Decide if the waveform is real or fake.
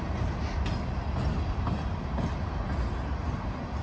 real